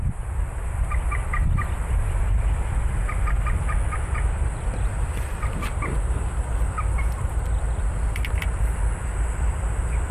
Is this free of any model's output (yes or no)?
yes